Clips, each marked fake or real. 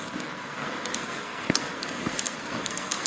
fake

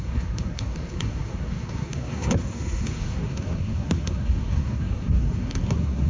fake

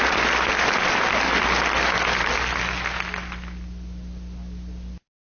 real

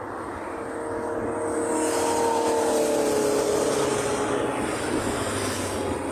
real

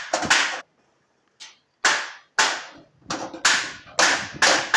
real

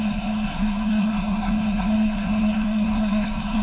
fake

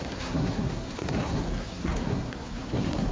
fake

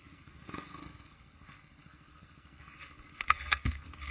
fake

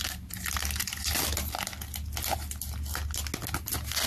real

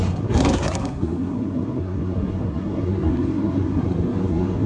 fake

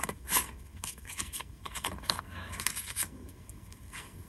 fake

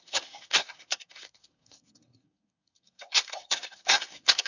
fake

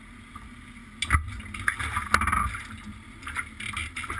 real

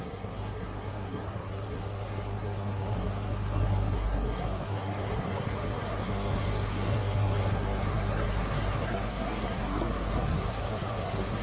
fake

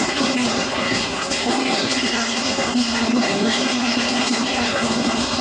fake